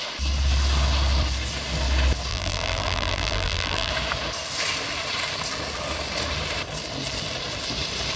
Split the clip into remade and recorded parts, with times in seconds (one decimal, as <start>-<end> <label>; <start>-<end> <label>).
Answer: 0.0-2.3 recorded; 2.3-3.9 remade; 3.9-8.2 recorded